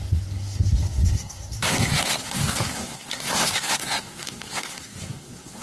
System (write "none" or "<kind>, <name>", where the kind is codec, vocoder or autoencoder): codec, SNAC